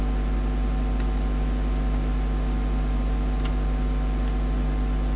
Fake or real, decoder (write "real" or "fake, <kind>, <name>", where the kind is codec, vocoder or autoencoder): real